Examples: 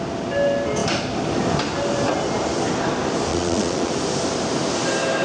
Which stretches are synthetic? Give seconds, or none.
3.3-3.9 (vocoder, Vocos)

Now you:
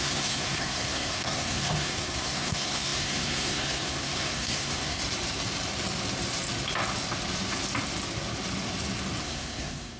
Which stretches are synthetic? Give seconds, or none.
0.0-5.0 (codec, SNAC); 9.2-10.0

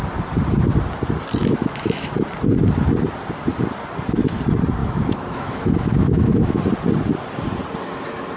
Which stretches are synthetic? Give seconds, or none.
1.4-2.1 (autoencoder, DAC-VAE); 4.8-6.6

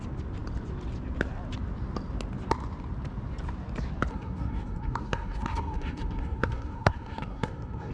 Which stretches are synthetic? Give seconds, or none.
4.1-7.9 (codec, SNAC)